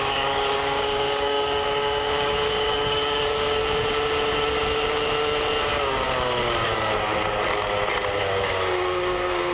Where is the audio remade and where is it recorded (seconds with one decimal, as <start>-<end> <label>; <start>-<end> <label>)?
0.0-3.6 remade; 3.6-8.2 recorded; 8.2-9.5 remade